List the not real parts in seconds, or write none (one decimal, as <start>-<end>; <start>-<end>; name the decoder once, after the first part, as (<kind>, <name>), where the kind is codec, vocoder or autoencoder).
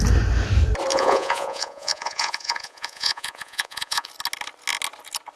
0.9-4.1 (vocoder, Vocos)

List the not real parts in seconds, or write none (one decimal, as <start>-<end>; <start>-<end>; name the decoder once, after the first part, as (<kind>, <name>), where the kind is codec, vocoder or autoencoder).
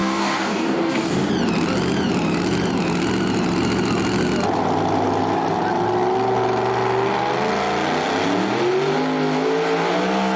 0.0-1.3 (codec, DAC)